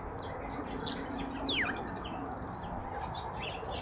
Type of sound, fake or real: real